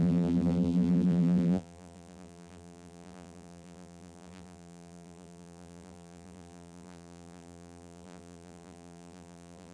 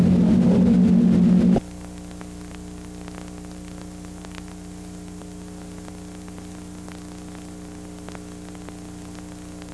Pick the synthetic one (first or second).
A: first